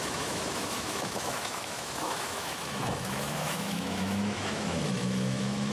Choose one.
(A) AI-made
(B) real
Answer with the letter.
A